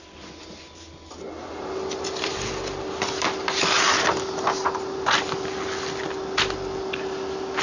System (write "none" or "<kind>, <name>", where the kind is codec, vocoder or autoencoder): none